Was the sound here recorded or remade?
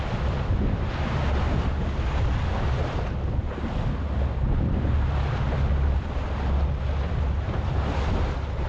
recorded